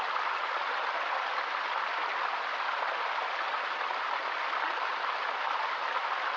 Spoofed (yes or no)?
no